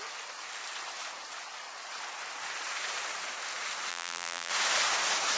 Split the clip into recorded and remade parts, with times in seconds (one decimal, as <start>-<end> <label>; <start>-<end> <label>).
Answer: 0.0-3.9 recorded; 3.9-4.5 remade; 4.5-5.4 recorded